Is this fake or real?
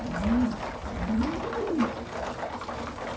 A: real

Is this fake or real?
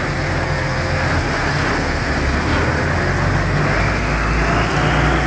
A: real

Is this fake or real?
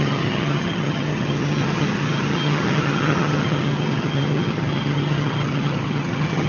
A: fake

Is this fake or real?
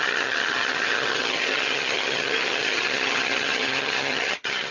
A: fake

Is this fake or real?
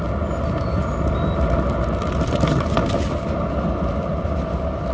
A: real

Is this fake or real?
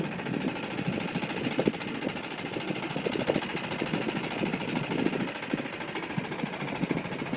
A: real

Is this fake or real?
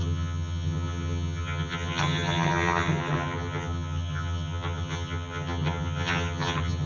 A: fake